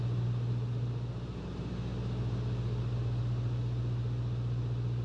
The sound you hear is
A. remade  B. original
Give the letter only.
B